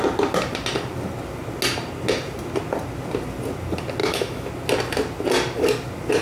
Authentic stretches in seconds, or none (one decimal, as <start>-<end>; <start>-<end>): 0.0-4.0; 4.5-6.2